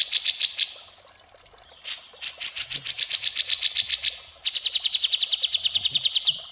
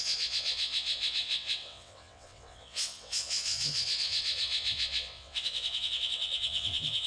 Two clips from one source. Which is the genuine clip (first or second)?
first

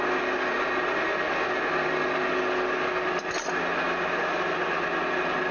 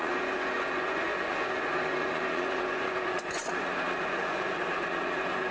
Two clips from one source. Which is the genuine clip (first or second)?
first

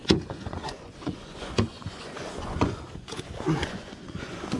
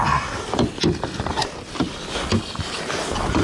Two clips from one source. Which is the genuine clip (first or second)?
second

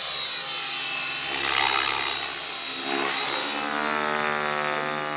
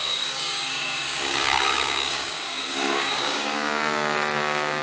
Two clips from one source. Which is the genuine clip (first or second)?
first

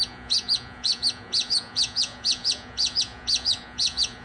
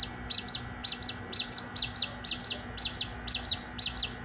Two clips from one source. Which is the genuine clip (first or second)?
second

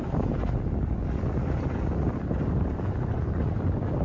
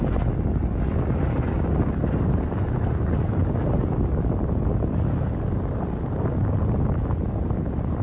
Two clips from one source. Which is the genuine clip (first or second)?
second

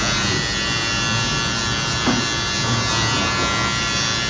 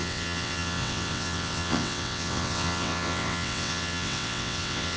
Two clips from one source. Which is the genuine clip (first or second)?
first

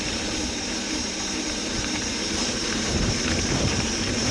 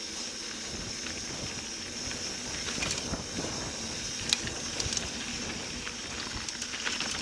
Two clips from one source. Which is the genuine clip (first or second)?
second